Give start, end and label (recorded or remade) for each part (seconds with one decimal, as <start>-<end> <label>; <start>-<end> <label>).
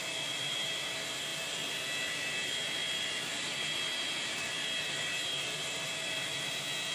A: 0.0-1.3 recorded; 1.3-1.8 remade; 1.8-2.4 recorded; 2.4-6.5 remade; 6.5-6.9 recorded